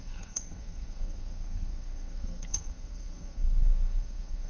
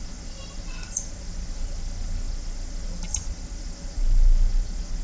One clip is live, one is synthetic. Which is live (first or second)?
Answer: second